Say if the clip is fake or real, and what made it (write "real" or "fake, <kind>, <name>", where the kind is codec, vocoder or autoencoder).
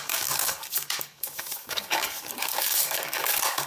fake, codec, DAC